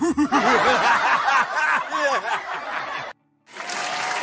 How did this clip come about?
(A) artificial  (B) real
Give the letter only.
A